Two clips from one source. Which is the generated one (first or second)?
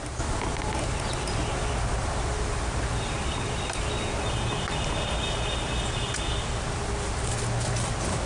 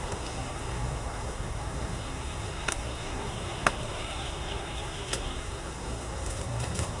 second